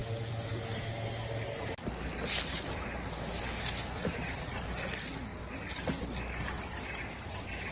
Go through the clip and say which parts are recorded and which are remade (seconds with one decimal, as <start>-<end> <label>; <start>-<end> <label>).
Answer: 0.0-7.7 recorded